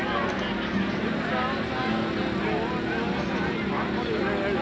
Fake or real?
real